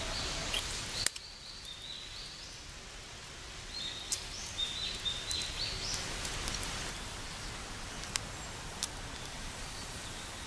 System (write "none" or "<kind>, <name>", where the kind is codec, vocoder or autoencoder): none